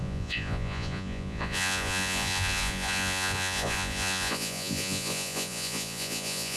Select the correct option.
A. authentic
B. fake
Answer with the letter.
B